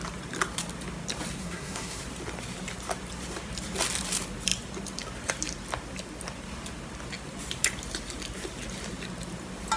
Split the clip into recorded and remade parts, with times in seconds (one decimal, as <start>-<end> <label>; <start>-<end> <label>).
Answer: 0.0-1.4 recorded; 1.4-2.0 remade; 2.0-9.8 recorded